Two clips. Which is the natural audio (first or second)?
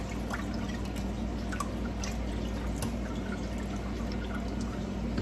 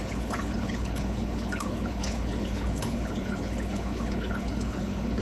first